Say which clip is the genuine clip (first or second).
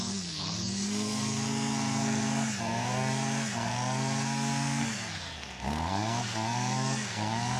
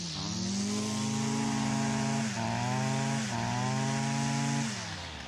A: second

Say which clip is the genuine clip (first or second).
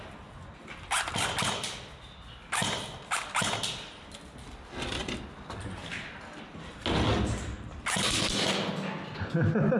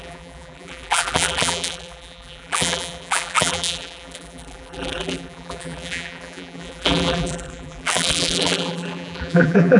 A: first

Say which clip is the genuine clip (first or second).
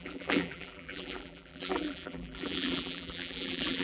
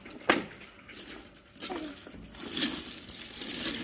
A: second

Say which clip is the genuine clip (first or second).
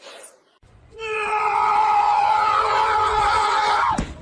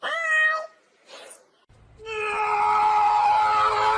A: second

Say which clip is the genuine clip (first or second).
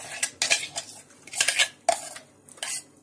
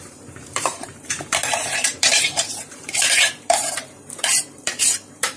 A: first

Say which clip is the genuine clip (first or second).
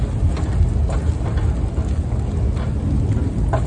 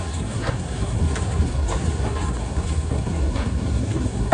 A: first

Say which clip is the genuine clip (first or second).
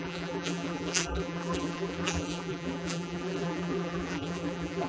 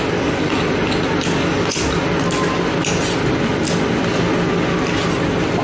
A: second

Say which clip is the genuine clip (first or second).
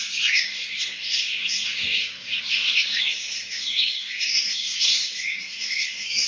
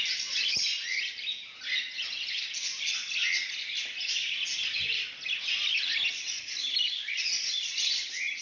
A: second